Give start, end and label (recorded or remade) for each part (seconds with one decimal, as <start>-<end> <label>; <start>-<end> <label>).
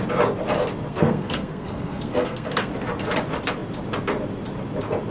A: 0.0-0.9 recorded; 0.9-2.7 remade; 2.7-5.1 recorded